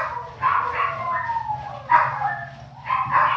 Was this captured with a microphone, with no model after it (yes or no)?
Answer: yes